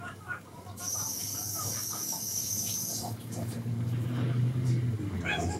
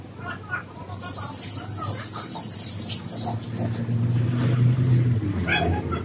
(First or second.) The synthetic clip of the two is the first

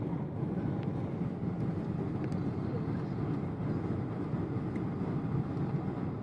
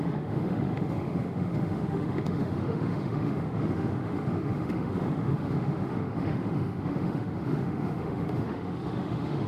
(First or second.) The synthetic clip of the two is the second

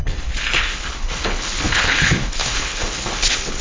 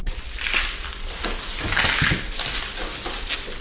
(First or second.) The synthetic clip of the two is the first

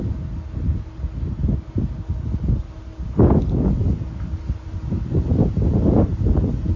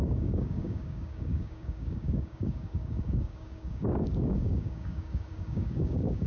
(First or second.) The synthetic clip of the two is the second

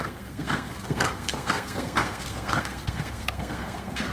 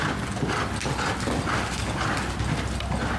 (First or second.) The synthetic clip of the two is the first